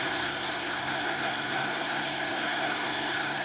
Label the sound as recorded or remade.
remade